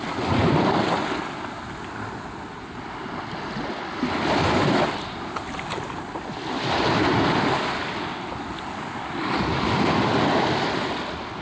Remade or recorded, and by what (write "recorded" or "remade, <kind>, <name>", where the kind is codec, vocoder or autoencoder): recorded